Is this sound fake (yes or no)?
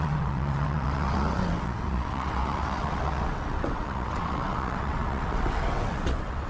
yes